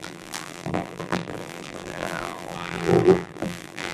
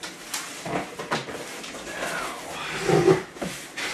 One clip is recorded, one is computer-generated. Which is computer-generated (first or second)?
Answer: first